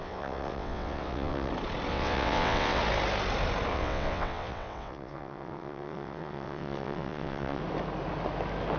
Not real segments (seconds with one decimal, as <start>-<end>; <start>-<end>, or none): 0.0-1.5; 1.9-2.8; 3.7-7.6